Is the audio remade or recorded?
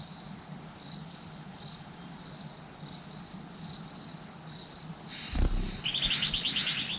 recorded